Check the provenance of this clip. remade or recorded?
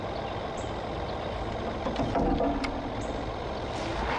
recorded